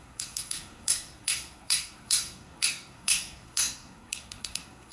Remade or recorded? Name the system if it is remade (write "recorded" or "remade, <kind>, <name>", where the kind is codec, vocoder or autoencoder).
remade, codec, SNAC